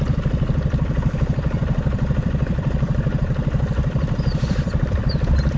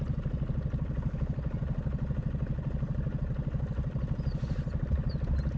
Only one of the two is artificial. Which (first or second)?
first